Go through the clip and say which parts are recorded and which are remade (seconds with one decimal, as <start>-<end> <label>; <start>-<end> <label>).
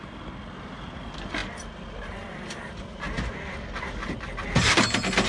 0.0-5.3 recorded